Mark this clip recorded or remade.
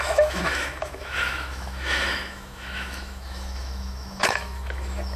remade